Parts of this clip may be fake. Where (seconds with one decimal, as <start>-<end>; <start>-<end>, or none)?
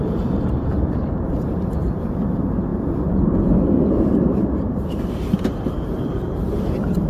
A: 0.0-2.7; 3.9-7.1